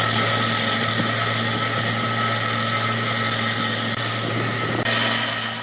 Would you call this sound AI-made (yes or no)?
no